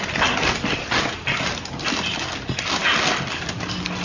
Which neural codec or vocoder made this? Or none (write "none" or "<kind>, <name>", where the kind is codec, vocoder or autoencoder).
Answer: none